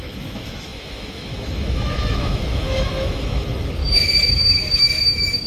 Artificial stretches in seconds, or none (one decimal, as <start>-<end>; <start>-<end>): 0.0-3.8; 4.3-5.5